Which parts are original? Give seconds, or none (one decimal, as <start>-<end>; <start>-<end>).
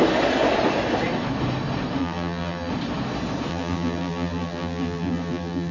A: 0.0-2.0; 2.7-3.5